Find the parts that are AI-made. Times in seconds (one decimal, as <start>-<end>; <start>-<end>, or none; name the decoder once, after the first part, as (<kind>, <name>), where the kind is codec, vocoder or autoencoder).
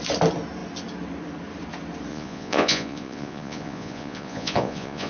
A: 2.1-5.1 (vocoder, Vocos)